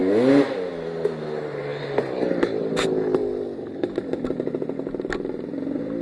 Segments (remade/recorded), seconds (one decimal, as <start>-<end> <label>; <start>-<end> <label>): 0.0-6.0 recorded